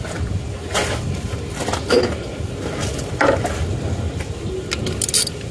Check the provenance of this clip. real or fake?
real